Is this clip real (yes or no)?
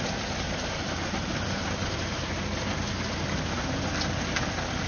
yes